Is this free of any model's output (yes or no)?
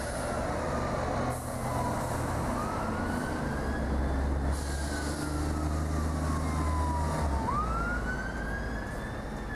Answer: yes